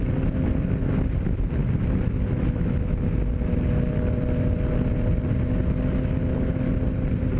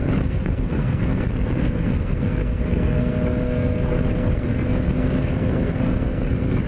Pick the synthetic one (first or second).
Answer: second